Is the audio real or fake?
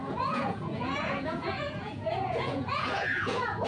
fake